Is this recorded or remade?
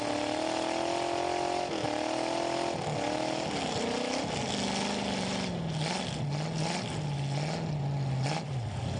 recorded